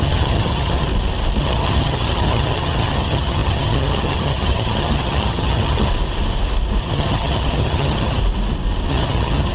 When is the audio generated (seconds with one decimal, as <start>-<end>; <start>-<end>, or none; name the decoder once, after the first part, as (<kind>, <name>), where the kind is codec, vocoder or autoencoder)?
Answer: 0.0-0.9 (vocoder, HiFi-GAN); 1.4-5.9; 6.8-8.2; 8.9-9.5